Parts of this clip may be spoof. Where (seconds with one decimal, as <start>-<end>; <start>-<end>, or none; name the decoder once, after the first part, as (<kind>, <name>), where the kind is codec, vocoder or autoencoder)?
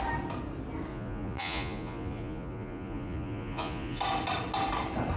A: 0.9-4.0 (vocoder, Vocos)